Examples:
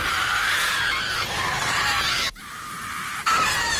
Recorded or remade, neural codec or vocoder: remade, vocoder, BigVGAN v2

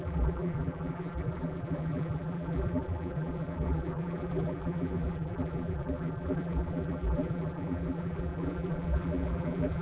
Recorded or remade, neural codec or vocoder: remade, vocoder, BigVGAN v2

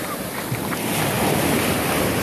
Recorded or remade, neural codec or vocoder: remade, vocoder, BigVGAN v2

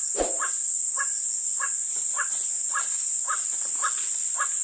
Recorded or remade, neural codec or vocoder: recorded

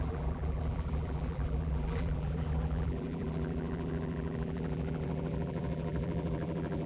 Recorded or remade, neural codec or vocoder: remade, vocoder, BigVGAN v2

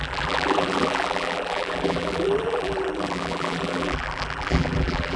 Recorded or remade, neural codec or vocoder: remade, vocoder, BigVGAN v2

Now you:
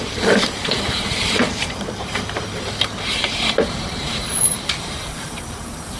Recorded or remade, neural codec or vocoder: remade, vocoder, BigVGAN v2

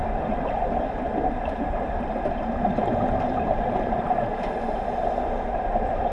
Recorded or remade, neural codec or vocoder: remade, vocoder, BigVGAN v2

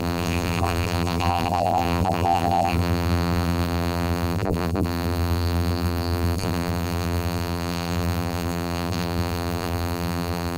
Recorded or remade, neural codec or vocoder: remade, vocoder, BigVGAN v2